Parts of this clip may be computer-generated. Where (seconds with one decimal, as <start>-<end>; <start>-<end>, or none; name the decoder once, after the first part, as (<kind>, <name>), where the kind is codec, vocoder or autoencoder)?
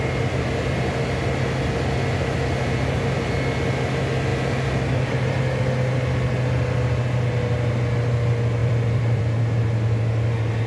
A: 8.6-9.2 (vocoder, BigVGAN v2)